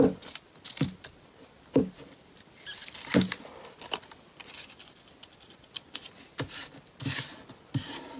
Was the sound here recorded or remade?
recorded